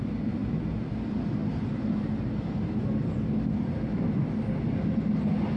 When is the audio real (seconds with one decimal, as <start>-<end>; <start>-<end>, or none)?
0.0-1.4; 4.8-5.6